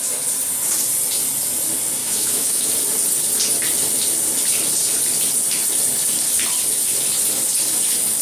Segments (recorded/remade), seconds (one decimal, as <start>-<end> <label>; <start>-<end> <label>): 0.0-2.0 recorded; 2.0-2.7 remade; 2.7-8.2 recorded